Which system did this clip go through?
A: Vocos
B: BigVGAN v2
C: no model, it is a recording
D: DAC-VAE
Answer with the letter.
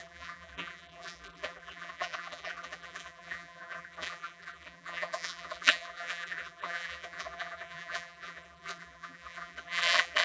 B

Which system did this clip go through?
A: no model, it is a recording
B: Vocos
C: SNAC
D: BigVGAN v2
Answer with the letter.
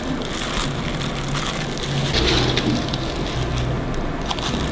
A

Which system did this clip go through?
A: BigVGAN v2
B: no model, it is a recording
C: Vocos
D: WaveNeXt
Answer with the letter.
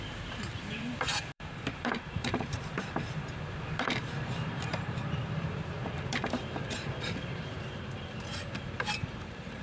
A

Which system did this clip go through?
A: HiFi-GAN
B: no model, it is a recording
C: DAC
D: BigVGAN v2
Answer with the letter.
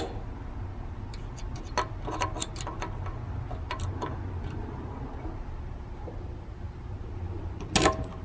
B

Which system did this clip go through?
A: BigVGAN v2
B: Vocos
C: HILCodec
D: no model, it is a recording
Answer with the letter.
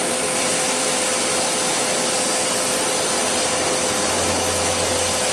D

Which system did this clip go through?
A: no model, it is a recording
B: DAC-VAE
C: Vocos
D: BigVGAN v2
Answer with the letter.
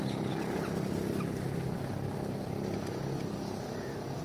A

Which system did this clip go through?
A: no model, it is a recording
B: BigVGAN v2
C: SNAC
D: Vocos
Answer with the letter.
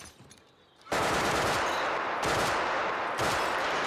B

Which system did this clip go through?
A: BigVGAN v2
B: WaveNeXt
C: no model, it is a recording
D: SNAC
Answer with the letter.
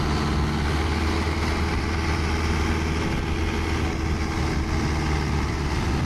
C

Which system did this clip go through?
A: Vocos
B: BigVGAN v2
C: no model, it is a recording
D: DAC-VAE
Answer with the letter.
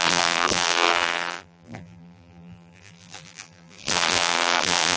B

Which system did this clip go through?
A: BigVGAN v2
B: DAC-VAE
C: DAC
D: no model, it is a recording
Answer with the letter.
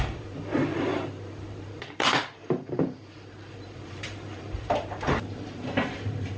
A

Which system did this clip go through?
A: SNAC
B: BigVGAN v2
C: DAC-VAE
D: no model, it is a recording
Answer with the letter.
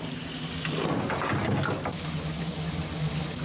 D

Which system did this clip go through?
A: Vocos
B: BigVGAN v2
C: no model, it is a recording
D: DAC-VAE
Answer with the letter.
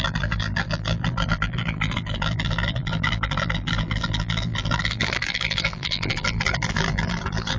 B